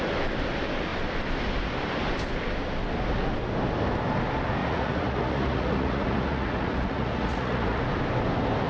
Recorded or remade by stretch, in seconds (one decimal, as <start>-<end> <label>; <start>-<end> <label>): 0.0-4.6 recorded; 4.6-7.8 remade; 7.8-8.7 recorded